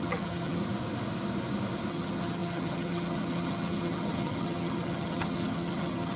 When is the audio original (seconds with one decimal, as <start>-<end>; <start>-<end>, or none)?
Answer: 0.6-1.9